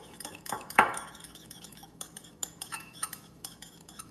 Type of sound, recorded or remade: remade